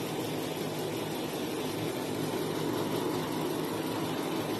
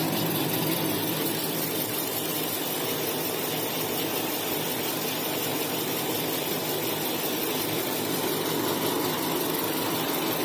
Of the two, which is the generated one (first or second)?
second